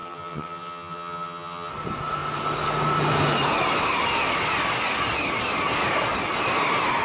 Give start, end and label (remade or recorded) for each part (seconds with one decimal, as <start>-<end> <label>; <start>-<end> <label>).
0.0-1.7 remade; 1.7-7.0 recorded

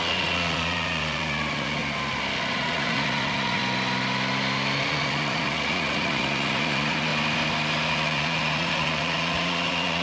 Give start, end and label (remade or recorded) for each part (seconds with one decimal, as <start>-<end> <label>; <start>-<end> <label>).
0.0-1.8 remade; 1.8-2.5 recorded; 2.5-3.6 remade; 3.6-4.8 recorded; 4.8-7.1 remade; 7.1-7.9 recorded; 7.9-10.0 remade

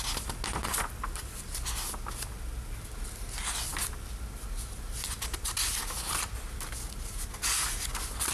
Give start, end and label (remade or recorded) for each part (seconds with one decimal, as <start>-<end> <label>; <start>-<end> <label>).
0.0-8.3 recorded

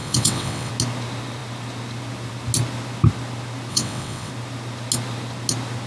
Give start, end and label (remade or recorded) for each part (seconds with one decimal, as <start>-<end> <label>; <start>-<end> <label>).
0.0-0.7 remade; 0.7-3.7 recorded; 3.7-4.3 remade; 4.3-5.9 recorded

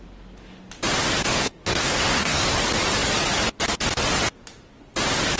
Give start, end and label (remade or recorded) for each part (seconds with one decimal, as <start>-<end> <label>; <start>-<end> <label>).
0.0-1.4 recorded; 1.4-2.5 remade; 2.5-5.4 recorded

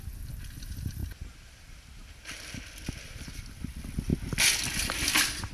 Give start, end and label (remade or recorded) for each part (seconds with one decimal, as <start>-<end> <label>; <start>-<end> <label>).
0.0-5.5 recorded

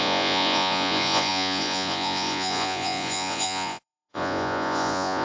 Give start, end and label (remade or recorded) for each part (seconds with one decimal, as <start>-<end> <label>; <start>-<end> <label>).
0.0-5.2 remade

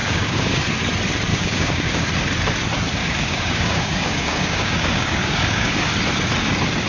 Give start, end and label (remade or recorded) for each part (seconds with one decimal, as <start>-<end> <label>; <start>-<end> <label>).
0.0-0.6 remade; 0.6-1.3 recorded; 1.3-2.1 remade; 2.1-3.0 recorded; 3.0-5.8 remade; 5.8-6.9 recorded